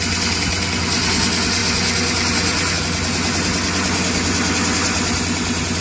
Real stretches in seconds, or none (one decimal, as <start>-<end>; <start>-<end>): 0.0-5.8